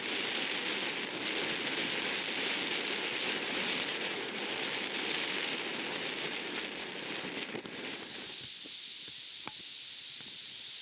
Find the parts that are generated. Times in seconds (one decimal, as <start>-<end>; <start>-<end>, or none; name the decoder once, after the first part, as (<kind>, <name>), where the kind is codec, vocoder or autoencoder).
3.9-4.4 (vocoder, Vocos)